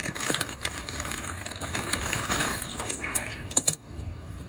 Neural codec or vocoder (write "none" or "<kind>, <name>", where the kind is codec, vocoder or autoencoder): codec, DAC